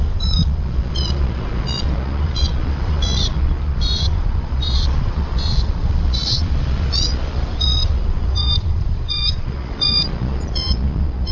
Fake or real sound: fake